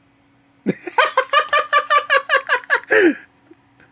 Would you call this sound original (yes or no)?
yes